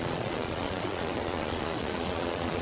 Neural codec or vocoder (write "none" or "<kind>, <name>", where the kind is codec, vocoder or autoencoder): vocoder, Vocos